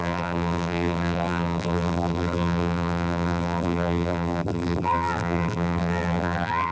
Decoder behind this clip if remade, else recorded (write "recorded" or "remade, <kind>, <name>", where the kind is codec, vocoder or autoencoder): remade, vocoder, BigVGAN v2